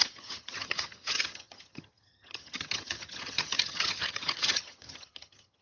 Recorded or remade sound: remade